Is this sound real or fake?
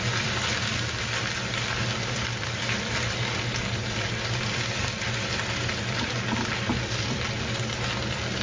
fake